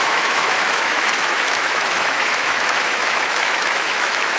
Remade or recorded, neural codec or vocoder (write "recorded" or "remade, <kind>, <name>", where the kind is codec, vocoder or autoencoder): remade, autoencoder, DAC-VAE